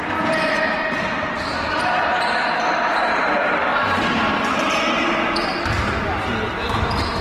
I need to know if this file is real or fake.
real